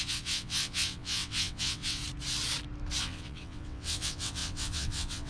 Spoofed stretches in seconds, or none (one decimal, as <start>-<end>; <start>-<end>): 0.0-2.0; 3.0-5.3